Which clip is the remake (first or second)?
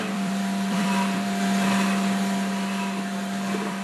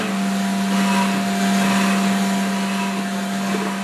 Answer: first